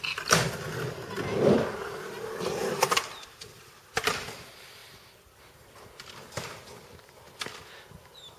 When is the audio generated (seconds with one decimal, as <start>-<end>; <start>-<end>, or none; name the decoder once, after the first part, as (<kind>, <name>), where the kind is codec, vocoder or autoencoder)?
none